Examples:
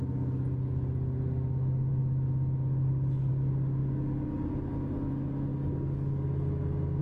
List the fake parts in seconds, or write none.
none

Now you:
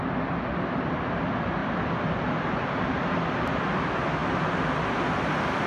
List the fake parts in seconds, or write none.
1.6-3.8

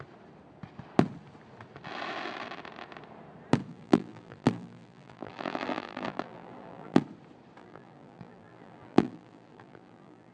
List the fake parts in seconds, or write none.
3.7-7.0; 7.6-10.3

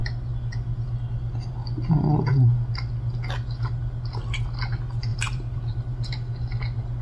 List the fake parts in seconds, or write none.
5.1-6.1

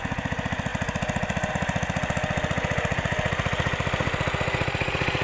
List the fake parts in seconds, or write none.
none

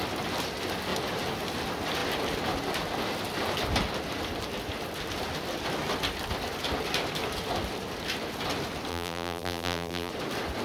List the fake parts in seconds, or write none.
8.9-10.1

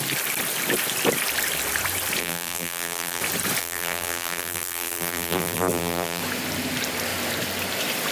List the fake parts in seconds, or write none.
2.2-3.2; 3.6-6.2

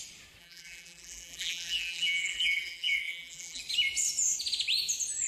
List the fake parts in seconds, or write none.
0.4-3.6